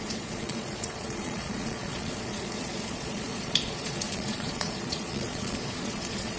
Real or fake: fake